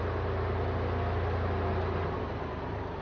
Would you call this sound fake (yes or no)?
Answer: no